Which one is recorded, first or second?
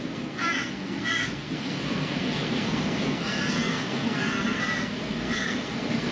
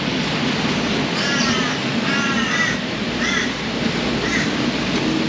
second